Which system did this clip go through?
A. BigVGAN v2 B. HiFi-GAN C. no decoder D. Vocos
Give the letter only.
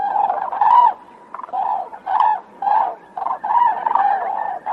D